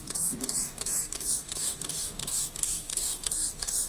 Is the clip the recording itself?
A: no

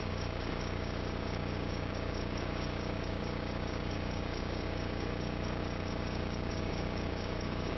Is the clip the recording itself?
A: no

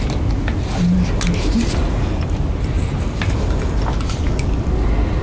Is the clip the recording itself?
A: yes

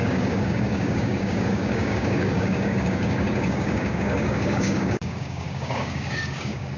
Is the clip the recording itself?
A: no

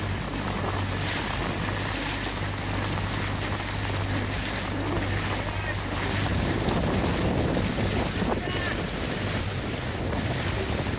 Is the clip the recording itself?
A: yes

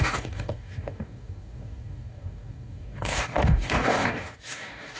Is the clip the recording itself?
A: no